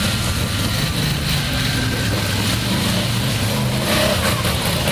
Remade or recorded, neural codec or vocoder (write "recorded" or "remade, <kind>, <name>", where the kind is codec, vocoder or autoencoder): recorded